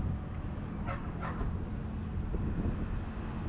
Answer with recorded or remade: recorded